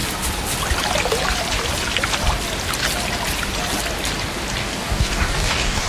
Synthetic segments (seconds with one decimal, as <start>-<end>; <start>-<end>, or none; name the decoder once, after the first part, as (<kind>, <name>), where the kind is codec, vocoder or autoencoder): 4.6-5.9 (codec, DAC)